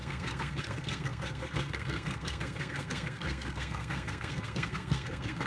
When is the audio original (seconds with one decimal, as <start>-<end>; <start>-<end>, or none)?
none